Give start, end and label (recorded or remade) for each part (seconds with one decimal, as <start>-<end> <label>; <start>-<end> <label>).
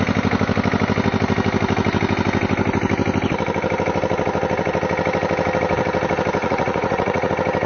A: 0.0-6.4 recorded; 6.4-7.3 remade; 7.3-7.7 recorded